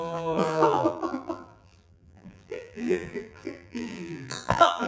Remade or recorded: remade